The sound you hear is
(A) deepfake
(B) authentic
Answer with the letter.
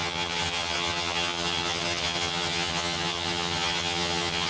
A